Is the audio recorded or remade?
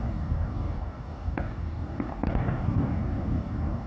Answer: remade